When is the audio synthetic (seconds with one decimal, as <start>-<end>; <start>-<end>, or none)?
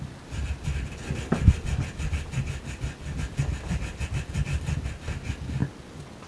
none